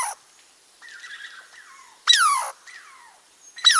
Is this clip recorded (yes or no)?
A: yes